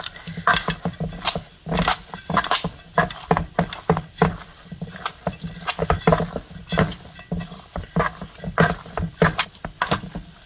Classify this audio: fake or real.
real